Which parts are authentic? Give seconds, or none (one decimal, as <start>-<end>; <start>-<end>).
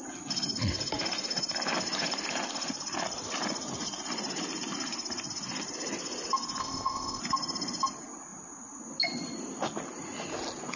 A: 0.0-6.6; 7.2-10.8